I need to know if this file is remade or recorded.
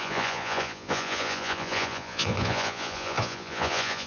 remade